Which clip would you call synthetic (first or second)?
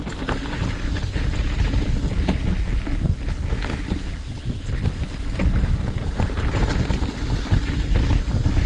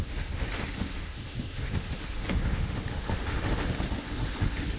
second